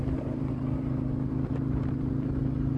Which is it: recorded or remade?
recorded